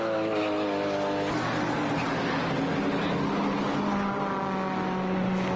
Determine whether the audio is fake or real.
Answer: real